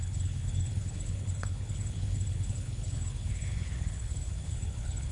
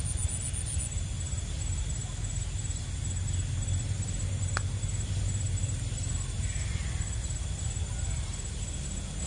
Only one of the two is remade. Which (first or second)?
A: first